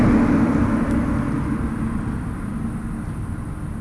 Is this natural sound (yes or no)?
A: yes